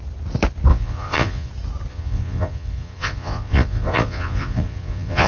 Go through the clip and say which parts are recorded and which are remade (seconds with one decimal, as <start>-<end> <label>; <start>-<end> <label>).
0.0-0.7 recorded; 0.7-1.5 remade; 1.5-1.9 recorded; 1.9-5.3 remade